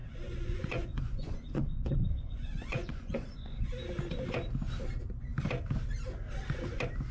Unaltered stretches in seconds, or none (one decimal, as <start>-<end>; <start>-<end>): 3.7-7.1